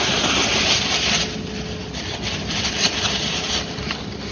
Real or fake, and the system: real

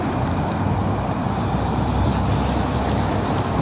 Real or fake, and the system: real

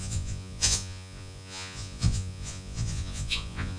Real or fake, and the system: fake, vocoder, Vocos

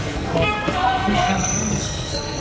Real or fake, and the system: fake, codec, SNAC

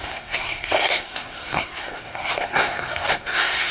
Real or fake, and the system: fake, codec, SNAC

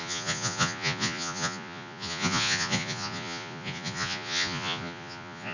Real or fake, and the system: fake, vocoder, Vocos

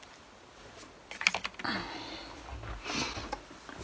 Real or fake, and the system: real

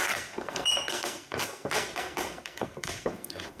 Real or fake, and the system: fake, codec, SNAC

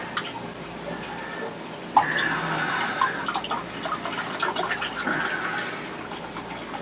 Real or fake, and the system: real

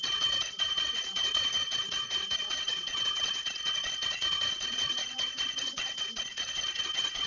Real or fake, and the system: fake, vocoder, WaveNeXt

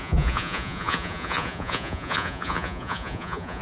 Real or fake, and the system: fake, vocoder, Vocos